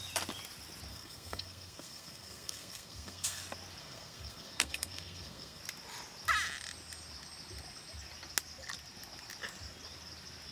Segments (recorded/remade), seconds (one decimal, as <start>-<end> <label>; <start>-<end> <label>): 0.0-0.9 recorded; 0.9-3.4 remade; 3.4-3.8 recorded; 3.8-5.6 remade; 5.6-10.5 recorded